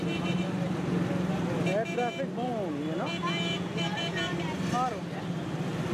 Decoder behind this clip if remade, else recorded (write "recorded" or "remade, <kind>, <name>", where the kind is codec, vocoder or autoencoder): recorded